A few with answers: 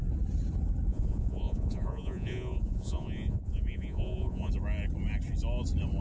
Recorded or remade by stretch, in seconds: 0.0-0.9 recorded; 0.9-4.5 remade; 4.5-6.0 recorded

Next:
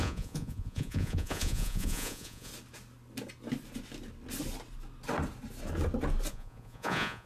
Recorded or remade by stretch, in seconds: 0.0-2.5 remade; 2.5-6.3 recorded; 6.3-7.3 remade

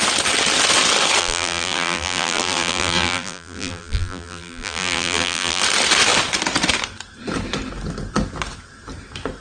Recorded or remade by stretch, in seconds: 0.0-1.2 recorded; 1.2-5.6 remade; 5.6-9.4 recorded

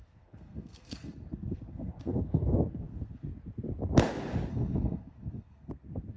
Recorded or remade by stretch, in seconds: 0.0-3.3 remade; 3.3-4.5 recorded; 4.5-6.2 remade